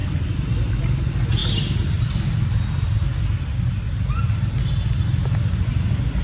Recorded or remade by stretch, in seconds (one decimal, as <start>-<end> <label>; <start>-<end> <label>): 0.0-6.2 recorded